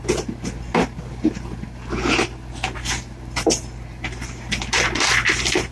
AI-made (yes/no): no